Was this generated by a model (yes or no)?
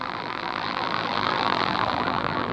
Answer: yes